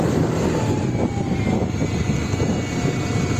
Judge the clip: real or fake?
real